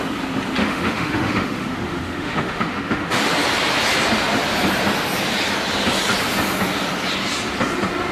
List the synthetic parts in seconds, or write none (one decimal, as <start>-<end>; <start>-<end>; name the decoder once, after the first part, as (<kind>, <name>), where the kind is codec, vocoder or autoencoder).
0.6-3.3 (autoencoder, DAC-VAE)